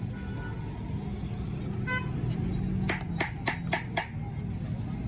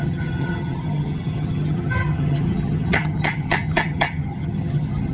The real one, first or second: first